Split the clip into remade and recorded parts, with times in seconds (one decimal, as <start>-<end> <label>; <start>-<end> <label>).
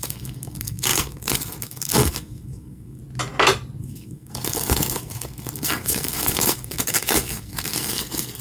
0.0-3.0 remade; 3.0-3.8 recorded; 3.8-8.4 remade